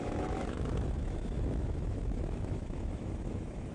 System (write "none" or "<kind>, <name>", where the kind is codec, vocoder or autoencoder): autoencoder, DAC-VAE